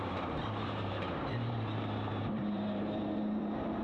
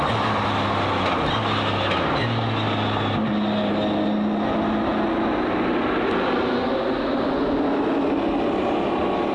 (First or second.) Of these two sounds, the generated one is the first